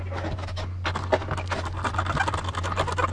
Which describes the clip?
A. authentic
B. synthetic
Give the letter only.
A